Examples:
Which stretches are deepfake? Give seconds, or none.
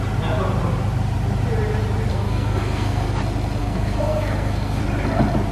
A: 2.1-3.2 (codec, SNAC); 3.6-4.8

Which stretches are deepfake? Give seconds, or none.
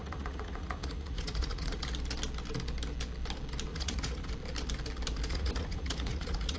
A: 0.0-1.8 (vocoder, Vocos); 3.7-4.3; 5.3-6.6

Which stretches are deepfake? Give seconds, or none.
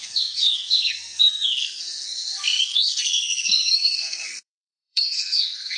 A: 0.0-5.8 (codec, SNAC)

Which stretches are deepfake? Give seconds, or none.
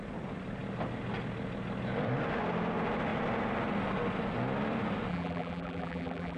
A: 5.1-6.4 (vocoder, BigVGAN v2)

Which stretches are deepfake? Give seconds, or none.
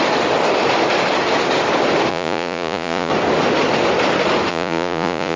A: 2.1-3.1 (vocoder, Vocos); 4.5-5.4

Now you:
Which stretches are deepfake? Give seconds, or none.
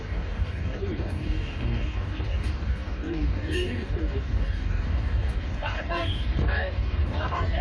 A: 0.0-7.6 (codec, DAC)